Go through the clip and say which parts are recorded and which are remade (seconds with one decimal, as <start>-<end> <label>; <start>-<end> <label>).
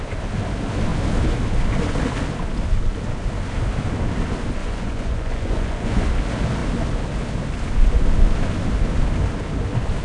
0.0-4.6 recorded; 4.6-6.1 remade; 6.1-10.0 recorded